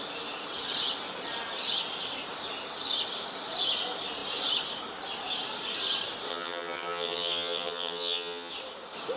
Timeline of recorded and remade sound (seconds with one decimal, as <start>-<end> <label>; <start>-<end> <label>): 0.0-6.3 recorded; 6.3-8.5 remade; 8.5-9.2 recorded